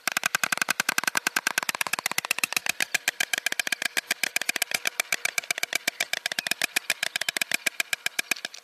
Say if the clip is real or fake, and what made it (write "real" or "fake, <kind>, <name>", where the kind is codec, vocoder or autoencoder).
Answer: real